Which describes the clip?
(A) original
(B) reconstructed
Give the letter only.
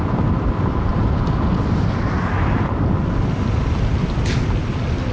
A